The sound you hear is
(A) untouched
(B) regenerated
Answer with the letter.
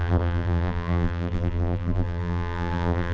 B